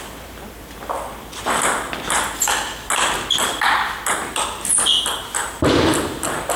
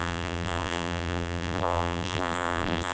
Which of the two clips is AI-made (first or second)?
second